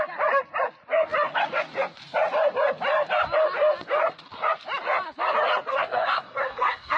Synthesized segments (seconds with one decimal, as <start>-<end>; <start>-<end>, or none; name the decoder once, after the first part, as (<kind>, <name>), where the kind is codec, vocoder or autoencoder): 5.7-7.0 (codec, SNAC)